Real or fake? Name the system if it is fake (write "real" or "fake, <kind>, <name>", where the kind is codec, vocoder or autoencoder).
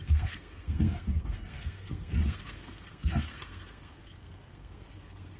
fake, codec, SNAC